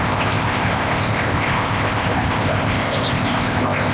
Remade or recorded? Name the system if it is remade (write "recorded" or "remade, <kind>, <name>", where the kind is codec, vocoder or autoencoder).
remade, codec, ZipCodec